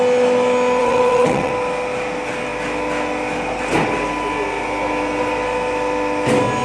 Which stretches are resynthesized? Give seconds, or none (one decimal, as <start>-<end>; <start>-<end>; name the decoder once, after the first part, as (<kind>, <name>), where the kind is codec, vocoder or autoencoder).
0.8-1.5 (vocoder, WaveNeXt)